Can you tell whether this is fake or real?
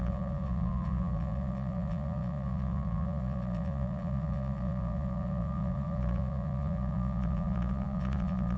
fake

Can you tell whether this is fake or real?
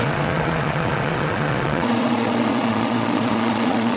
fake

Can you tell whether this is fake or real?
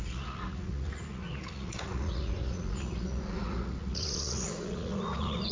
fake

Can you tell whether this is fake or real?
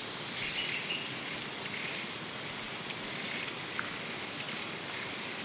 real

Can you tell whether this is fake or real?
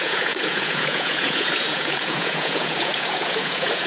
fake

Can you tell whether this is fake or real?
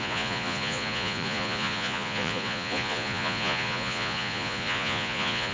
fake